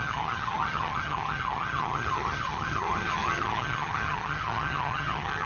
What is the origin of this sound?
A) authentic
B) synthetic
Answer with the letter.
B